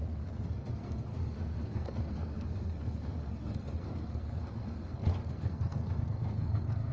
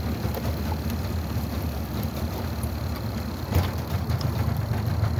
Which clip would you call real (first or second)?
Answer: second